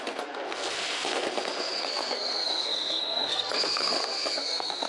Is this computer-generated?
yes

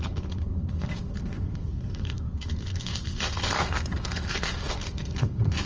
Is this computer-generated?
yes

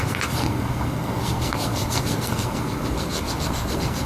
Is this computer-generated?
yes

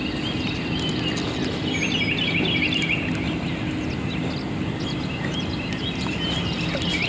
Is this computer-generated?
no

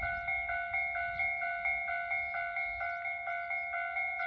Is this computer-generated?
no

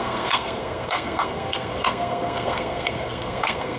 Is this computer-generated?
yes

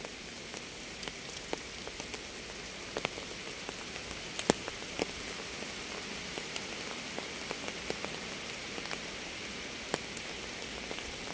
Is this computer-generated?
no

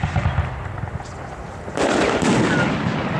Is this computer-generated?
no